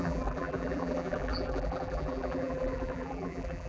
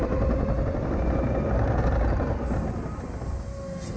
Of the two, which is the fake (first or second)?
first